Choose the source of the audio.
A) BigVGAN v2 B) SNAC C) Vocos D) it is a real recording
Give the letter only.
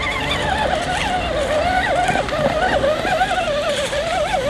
D